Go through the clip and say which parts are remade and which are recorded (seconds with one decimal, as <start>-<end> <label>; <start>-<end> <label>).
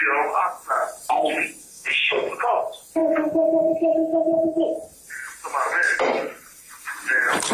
0.0-1.6 recorded; 1.6-2.3 remade; 2.3-7.5 recorded